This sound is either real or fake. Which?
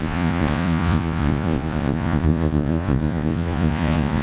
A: fake